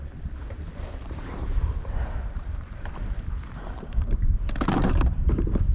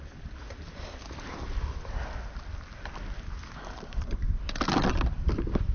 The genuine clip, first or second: second